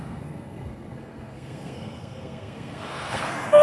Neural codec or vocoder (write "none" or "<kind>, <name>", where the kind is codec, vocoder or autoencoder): codec, SNAC